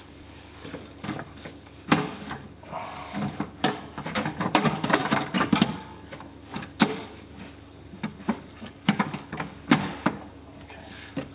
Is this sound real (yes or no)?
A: no